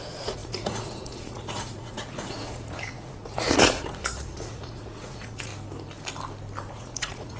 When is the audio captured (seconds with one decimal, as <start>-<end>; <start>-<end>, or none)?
5.5-6.7